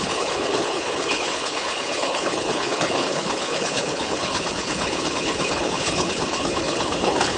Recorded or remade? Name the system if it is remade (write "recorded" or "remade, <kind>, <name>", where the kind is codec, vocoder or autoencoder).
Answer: remade, codec, HILCodec